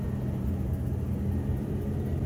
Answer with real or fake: real